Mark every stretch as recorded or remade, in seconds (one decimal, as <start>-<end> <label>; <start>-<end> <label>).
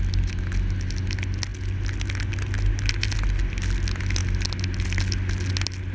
0.0-5.9 recorded